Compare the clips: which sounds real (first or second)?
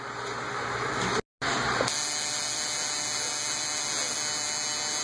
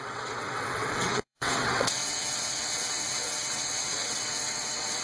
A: first